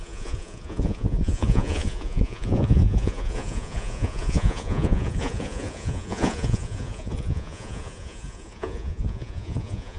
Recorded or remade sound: remade